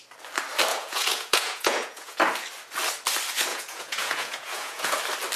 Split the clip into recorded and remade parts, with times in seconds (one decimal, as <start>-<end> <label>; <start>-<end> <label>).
0.0-0.7 recorded; 0.7-2.2 remade; 2.2-3.5 recorded; 3.5-5.0 remade; 5.0-5.4 recorded